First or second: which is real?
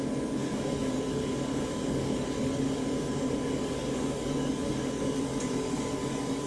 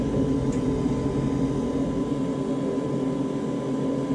second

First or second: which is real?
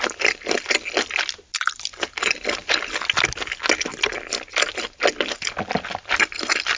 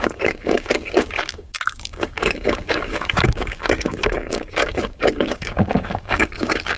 first